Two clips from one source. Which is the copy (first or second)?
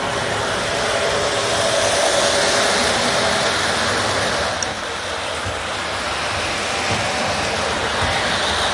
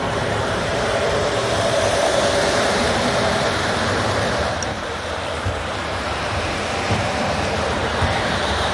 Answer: second